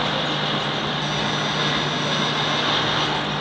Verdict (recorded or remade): recorded